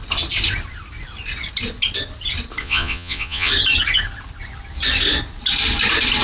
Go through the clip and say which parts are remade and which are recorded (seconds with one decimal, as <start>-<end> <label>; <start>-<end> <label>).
0.0-2.6 recorded; 2.6-3.5 remade; 3.5-6.2 recorded